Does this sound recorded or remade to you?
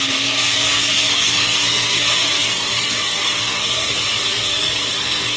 remade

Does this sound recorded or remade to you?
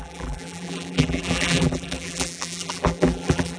remade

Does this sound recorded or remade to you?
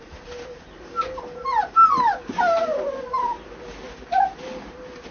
recorded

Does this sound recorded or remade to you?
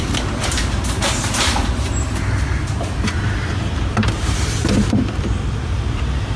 remade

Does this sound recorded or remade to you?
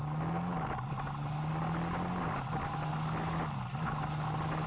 recorded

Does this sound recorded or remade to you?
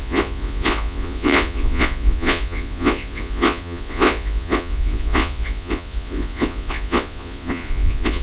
remade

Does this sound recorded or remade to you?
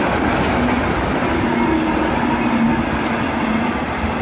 recorded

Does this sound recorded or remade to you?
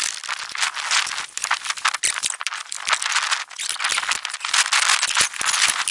recorded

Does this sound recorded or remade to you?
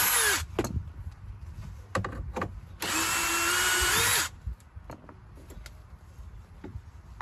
recorded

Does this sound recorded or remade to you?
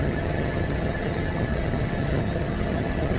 remade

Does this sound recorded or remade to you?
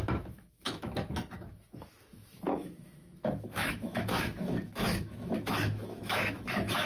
remade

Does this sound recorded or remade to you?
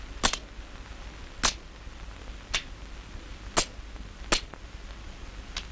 recorded